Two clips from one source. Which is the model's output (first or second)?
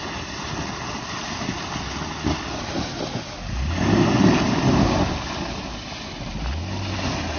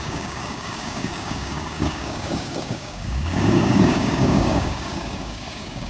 second